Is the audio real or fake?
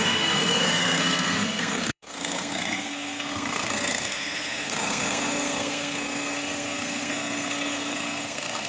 fake